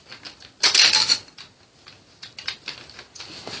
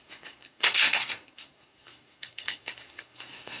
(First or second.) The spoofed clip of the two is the second